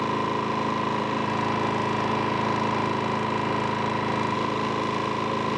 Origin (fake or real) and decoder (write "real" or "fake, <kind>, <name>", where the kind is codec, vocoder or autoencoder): real